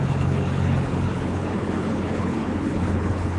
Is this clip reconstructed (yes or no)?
yes